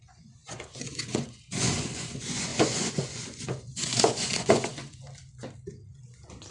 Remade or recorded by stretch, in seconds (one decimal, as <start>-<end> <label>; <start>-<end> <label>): 0.0-5.0 remade; 5.0-6.5 recorded